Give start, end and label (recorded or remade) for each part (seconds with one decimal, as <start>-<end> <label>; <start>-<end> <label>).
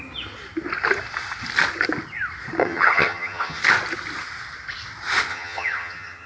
0.0-2.6 recorded; 2.6-3.6 remade; 3.6-5.3 recorded; 5.3-6.3 remade